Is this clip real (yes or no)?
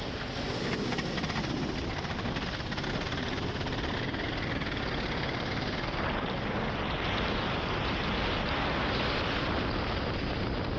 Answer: yes